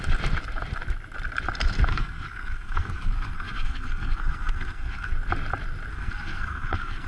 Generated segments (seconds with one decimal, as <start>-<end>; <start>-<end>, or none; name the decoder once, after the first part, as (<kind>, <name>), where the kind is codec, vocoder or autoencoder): 1.9-5.1 (codec, SNAC); 5.9-7.1